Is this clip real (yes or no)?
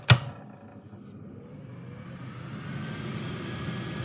yes